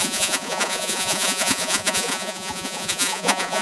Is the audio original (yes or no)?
no